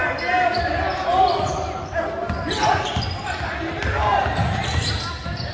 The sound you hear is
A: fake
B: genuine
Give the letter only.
B